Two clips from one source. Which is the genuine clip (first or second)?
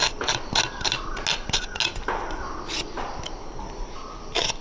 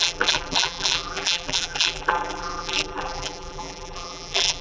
first